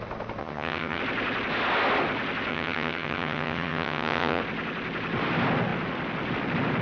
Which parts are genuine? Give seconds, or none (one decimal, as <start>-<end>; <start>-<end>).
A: 0.0-0.4; 1.0-2.5; 4.4-6.8